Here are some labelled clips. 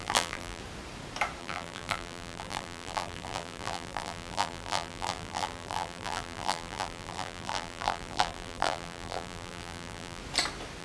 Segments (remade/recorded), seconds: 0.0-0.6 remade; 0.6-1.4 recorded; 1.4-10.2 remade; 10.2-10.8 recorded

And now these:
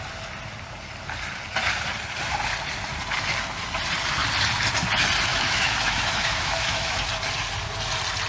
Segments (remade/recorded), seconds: 0.0-5.3 recorded; 5.3-7.0 remade; 7.0-8.3 recorded

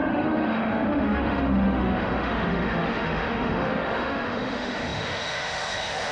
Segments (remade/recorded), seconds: 0.0-6.1 remade

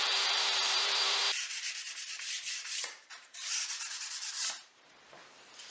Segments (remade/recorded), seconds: 0.0-5.7 remade